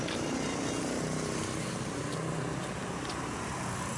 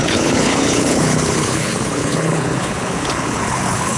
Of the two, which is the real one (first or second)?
first